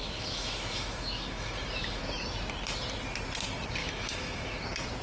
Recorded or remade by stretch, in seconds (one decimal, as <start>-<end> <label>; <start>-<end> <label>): 0.0-2.0 remade; 2.0-3.8 recorded; 3.8-4.6 remade; 4.6-5.0 recorded